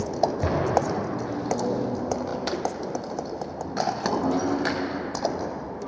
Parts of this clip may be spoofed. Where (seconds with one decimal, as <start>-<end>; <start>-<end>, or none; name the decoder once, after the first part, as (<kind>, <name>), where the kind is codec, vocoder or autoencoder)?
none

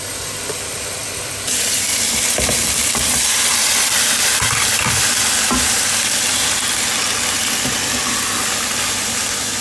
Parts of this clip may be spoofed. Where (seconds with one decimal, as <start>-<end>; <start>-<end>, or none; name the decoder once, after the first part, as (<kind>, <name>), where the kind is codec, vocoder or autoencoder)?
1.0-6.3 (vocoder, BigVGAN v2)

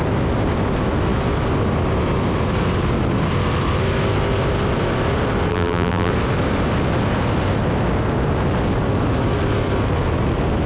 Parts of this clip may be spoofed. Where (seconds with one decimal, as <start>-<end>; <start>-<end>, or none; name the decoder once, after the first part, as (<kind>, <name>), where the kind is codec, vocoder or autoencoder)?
5.5-6.1 (vocoder, BigVGAN v2)

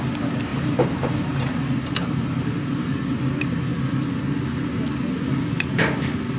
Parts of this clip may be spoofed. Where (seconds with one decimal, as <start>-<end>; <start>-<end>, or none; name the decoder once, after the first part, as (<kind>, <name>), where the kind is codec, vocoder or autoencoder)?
0.5-3.2 (vocoder, BigVGAN v2)

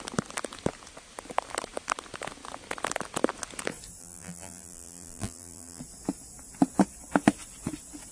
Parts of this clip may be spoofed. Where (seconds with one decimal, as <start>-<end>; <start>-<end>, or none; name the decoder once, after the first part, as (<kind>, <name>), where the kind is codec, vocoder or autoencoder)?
4.0-5.8 (vocoder, BigVGAN v2)

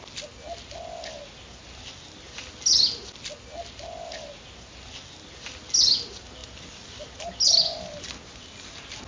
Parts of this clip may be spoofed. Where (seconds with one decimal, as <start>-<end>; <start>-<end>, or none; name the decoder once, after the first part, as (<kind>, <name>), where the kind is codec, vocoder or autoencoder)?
none

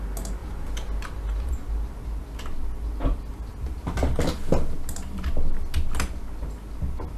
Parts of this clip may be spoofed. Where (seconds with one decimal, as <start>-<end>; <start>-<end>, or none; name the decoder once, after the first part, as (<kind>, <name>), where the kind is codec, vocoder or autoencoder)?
none